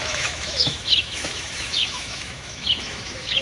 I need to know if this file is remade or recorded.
remade